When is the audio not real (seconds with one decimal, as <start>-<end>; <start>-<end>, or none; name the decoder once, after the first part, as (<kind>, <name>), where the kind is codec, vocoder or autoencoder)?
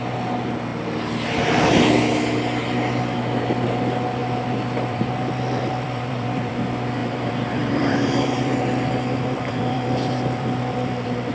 4.2-6.5 (vocoder, BigVGAN v2); 7.0-11.3